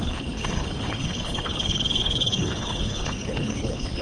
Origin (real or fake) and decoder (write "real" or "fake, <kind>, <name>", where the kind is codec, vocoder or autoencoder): fake, codec, HILCodec